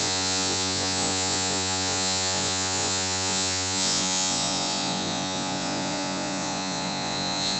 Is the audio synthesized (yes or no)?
yes